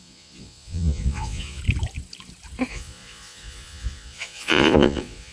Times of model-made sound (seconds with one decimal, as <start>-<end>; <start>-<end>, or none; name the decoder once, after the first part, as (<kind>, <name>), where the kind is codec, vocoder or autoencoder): 0.0-1.6 (vocoder, Vocos); 2.7-5.3

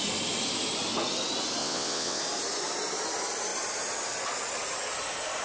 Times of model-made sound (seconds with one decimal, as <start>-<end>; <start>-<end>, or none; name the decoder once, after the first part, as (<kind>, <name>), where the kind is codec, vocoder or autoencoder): 1.6-2.2 (vocoder, WaveNeXt)

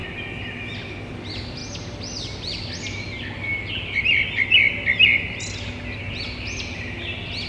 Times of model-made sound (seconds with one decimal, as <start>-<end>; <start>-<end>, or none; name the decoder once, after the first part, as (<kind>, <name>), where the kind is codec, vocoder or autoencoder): none

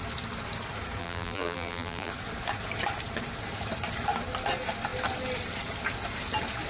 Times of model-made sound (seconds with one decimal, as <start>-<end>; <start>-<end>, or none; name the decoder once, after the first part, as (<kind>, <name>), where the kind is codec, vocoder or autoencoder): 1.0-2.1 (vocoder, BigVGAN v2)

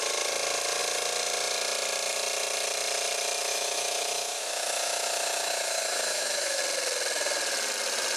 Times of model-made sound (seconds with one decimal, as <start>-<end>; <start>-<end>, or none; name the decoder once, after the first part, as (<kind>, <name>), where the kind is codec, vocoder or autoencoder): 3.5-6.6 (autoencoder, DAC-VAE)

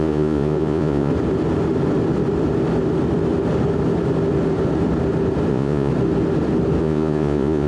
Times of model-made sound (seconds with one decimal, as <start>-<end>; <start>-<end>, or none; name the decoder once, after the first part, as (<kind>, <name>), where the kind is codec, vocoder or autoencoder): 0.0-1.1 (vocoder, Vocos); 5.5-5.9; 6.8-7.7